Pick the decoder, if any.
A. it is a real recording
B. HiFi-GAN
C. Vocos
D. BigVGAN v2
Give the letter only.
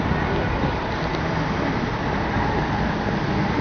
A